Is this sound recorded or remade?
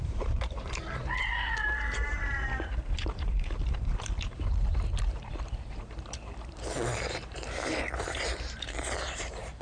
remade